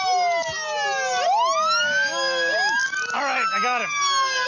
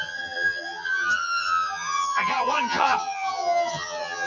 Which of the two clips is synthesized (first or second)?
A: second